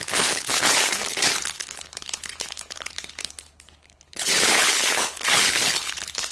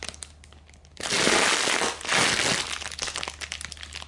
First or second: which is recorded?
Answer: second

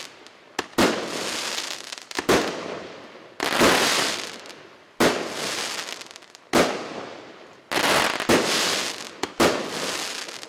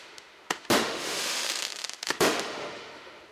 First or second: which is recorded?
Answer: first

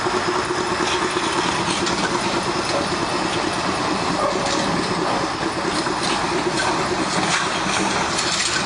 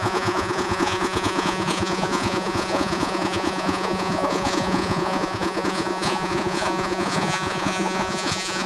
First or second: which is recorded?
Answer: first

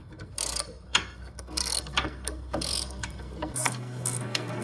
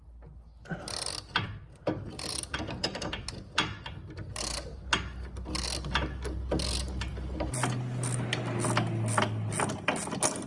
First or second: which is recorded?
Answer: second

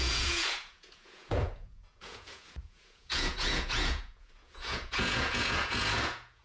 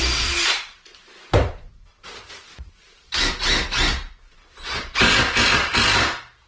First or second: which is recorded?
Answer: second